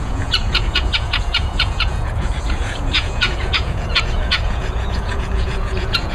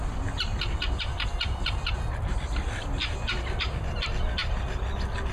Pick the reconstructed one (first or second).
first